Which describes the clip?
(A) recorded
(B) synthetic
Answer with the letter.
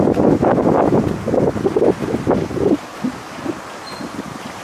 A